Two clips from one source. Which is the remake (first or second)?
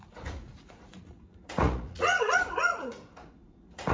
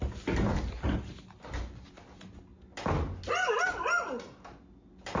first